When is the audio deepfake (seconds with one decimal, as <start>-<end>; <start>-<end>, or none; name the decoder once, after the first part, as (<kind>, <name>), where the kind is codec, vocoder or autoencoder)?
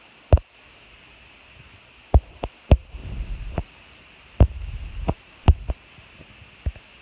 3.0-5.7 (vocoder, BigVGAN v2)